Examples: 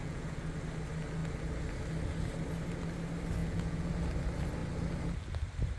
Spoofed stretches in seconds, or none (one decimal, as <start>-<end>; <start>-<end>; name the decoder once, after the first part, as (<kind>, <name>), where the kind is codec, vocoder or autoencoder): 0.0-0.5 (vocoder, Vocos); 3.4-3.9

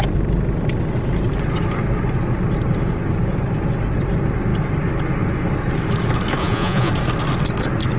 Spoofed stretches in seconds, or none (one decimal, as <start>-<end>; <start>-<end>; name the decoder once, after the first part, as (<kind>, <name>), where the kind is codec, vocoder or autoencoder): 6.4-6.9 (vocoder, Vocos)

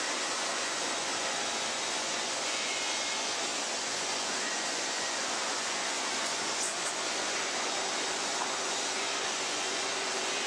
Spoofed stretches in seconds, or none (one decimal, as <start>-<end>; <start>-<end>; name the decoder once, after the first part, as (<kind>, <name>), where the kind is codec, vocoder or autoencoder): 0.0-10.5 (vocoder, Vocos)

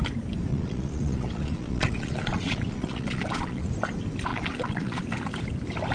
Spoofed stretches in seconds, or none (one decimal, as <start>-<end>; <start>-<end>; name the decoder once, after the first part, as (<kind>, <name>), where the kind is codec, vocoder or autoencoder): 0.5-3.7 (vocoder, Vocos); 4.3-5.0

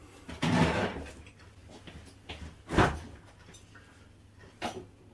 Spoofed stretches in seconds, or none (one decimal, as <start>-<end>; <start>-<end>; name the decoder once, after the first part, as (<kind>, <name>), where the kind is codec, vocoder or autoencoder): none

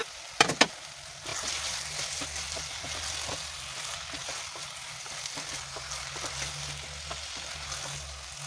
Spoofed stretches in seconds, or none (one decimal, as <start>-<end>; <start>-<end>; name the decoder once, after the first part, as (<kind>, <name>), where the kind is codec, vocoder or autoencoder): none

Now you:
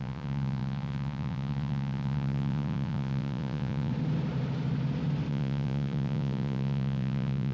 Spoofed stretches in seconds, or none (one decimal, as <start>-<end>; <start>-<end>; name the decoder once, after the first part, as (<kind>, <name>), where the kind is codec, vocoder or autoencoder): 0.0-3.9 (vocoder, Vocos); 5.3-7.5

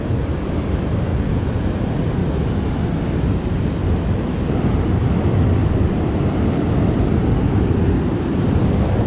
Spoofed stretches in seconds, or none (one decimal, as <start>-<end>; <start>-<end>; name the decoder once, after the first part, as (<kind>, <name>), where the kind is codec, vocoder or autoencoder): 1.1-1.7 (vocoder, Vocos)